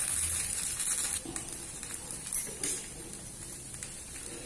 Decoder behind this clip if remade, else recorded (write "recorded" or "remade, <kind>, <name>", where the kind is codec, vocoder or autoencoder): recorded